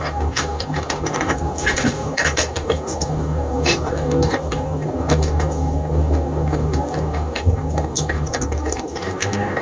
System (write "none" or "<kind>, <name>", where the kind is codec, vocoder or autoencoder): codec, DAC